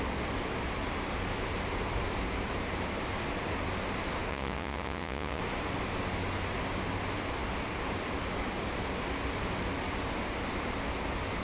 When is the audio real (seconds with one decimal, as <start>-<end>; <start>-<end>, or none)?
0.0-4.3; 5.4-11.4